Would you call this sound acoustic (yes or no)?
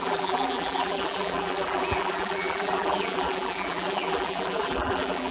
no